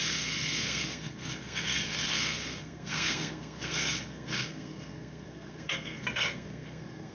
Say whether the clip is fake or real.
fake